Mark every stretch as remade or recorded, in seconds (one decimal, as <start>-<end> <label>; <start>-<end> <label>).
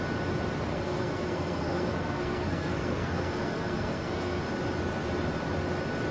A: 0.0-0.7 recorded; 0.7-4.4 remade; 4.4-6.1 recorded